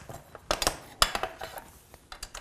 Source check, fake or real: real